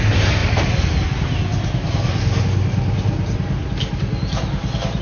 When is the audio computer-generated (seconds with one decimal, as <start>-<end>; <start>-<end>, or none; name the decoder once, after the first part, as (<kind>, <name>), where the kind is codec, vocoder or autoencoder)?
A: none